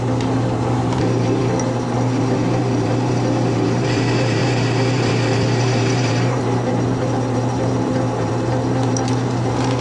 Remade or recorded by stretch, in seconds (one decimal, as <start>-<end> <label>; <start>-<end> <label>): 0.0-1.4 remade; 1.4-2.2 recorded; 2.2-9.8 remade